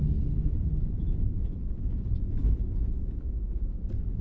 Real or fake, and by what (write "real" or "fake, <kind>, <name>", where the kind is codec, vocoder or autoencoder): fake, vocoder, Vocos